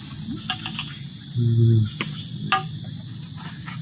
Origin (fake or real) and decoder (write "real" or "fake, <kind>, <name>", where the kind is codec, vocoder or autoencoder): real